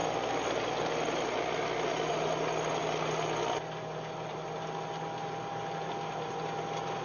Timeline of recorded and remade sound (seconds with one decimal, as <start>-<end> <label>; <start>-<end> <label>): 0.0-7.0 recorded